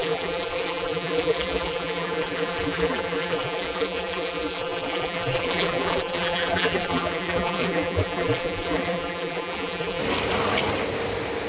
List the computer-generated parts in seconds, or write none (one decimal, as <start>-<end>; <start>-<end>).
0.0-10.0